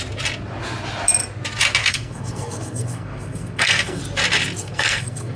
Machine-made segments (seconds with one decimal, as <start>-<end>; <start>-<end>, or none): 1.8-4.0; 4.6-5.4